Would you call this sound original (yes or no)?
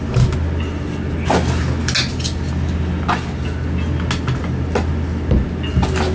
yes